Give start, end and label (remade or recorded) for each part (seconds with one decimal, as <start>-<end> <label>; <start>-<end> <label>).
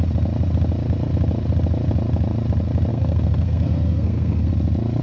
0.0-2.9 recorded; 2.9-4.5 remade; 4.5-5.0 recorded